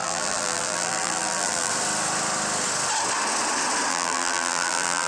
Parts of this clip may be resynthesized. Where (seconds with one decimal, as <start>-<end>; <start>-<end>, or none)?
0.0-1.7; 3.9-5.1